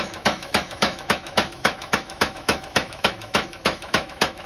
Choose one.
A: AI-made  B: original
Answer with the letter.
A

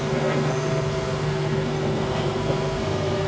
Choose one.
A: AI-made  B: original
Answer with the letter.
A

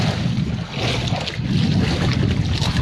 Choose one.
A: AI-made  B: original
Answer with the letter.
B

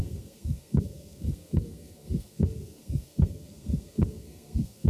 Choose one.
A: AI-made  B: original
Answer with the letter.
A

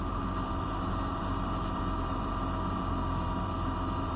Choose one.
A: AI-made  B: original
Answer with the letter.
A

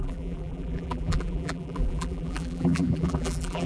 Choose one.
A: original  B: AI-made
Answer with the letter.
B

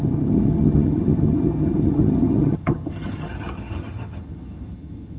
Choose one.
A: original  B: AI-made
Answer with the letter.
B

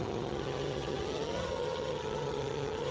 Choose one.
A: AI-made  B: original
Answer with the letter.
A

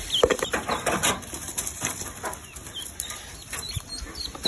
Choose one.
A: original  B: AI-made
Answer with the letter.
B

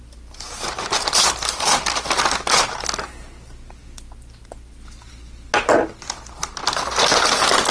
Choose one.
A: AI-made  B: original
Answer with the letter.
B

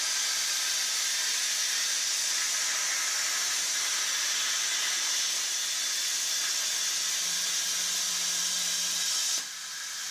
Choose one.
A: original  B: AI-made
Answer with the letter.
A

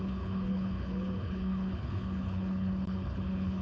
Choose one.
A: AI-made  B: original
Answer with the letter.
A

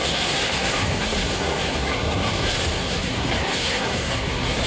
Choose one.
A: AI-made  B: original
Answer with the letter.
A